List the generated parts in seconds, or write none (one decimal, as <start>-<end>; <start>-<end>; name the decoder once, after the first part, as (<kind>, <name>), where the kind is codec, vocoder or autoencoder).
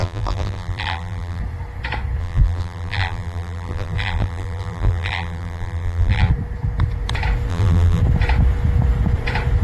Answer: 0.0-1.4 (vocoder, BigVGAN v2); 2.2-6.3; 7.5-8.0